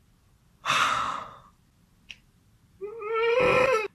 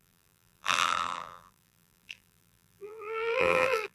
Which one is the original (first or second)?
first